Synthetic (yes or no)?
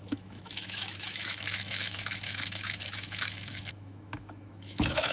yes